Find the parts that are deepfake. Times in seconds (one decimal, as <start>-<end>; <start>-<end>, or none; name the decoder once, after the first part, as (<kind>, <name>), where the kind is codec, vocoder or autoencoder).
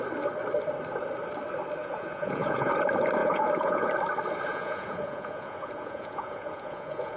1.8-2.7 (vocoder, Vocos); 3.2-3.9; 4.5-7.2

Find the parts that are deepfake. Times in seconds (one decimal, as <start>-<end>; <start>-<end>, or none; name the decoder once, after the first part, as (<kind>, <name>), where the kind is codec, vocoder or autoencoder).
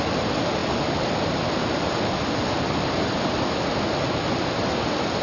none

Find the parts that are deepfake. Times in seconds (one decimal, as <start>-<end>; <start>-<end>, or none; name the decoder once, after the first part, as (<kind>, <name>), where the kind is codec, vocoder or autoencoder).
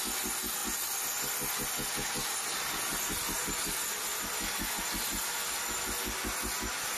none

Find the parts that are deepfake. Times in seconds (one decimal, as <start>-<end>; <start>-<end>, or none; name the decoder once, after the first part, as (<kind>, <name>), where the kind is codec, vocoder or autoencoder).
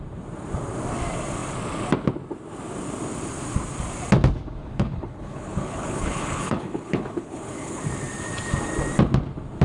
4.6-7.8 (codec, HILCodec)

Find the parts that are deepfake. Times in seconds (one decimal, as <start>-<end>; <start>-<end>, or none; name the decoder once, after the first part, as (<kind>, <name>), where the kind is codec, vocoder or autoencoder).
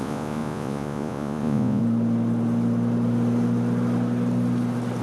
0.0-1.8 (vocoder, Vocos)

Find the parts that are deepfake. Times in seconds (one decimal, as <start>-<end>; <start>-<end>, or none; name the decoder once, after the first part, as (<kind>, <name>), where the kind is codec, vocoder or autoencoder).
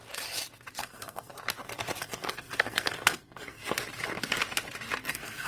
0.8-1.3 (codec, SNAC); 2.0-3.6; 5.1-5.5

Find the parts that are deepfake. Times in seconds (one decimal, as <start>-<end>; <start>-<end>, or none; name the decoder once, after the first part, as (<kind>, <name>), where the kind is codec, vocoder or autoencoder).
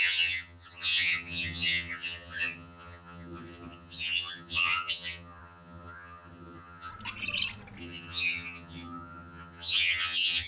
0.0-6.9 (vocoder, HiFi-GAN); 7.8-10.5